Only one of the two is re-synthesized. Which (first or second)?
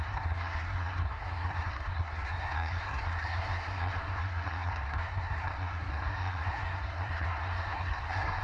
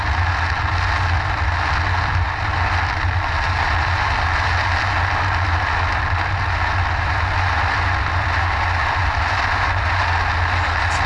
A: first